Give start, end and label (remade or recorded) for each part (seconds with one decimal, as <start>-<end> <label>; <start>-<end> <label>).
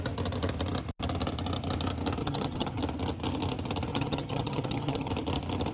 0.0-2.2 recorded; 2.2-2.8 remade; 2.8-3.9 recorded; 3.9-5.1 remade; 5.1-5.7 recorded